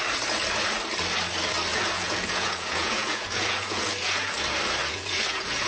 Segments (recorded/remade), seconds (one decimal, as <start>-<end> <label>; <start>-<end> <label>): 0.0-1.7 recorded; 1.7-4.2 remade; 4.2-4.8 recorded; 4.8-5.7 remade